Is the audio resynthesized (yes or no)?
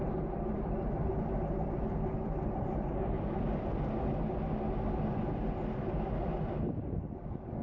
no